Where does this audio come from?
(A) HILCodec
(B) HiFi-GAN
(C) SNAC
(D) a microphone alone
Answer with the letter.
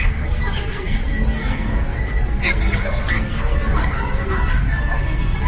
C